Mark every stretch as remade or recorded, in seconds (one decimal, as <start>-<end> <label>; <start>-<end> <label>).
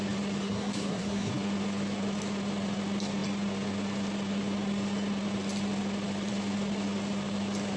0.0-0.4 recorded; 0.4-1.3 remade; 1.3-7.8 recorded